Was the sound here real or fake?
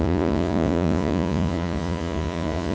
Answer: fake